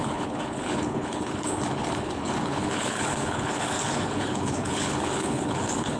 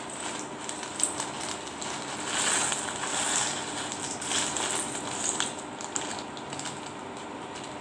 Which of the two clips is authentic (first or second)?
second